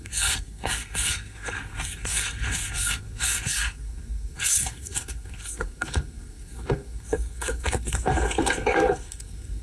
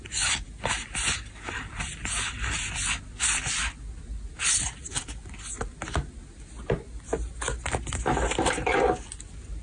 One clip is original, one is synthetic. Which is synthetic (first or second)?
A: first